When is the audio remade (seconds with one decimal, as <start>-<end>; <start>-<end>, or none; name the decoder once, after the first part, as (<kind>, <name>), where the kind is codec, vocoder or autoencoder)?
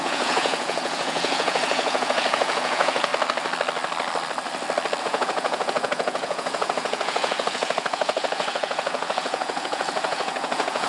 0.0-3.1 (vocoder, Vocos); 5.0-10.9